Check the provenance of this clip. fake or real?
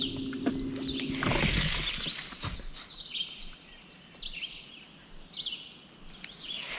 real